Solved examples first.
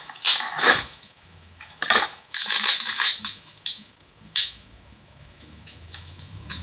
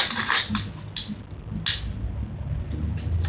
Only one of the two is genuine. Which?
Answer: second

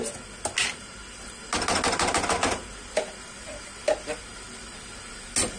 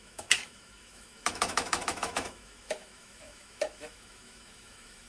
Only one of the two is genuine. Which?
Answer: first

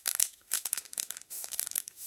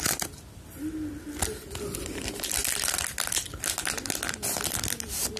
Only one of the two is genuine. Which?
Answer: second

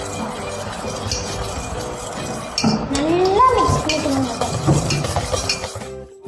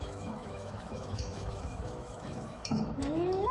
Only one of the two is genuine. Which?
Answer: first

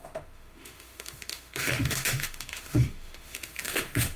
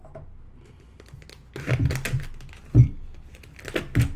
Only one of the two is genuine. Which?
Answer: second